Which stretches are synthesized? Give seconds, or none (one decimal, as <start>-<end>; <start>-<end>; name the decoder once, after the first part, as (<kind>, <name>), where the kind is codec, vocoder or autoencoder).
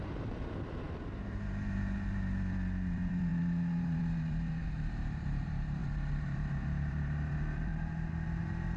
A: 0.0-7.7 (vocoder, BigVGAN v2); 8.4-8.8